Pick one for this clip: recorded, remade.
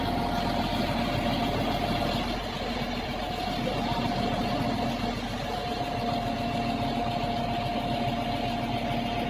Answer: recorded